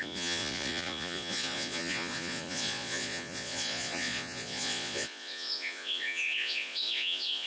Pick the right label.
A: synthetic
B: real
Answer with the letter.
A